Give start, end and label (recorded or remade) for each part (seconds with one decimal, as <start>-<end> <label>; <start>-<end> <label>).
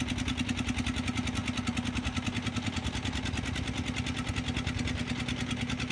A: 0.0-5.9 recorded